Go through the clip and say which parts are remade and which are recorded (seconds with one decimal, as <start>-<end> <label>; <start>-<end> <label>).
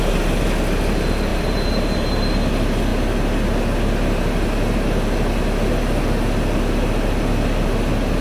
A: 0.0-1.3 recorded; 1.3-2.5 remade; 2.5-8.2 recorded